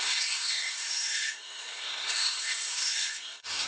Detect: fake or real fake